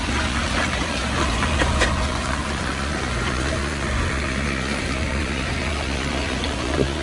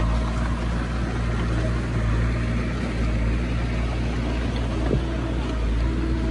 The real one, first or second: second